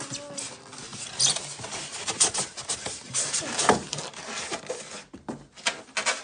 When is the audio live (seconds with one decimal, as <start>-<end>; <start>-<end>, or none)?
0.0-0.9; 4.6-6.2